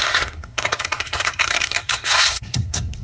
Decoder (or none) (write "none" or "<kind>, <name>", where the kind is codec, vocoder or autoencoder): codec, SNAC